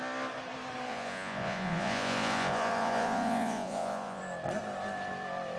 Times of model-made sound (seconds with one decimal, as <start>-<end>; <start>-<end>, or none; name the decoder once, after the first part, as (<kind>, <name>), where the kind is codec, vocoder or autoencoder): 0.9-4.2 (vocoder, Vocos)